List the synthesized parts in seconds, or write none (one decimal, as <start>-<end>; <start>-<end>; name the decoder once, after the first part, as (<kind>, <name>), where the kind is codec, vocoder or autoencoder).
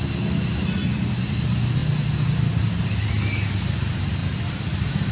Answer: 4.2-5.1 (vocoder, BigVGAN v2)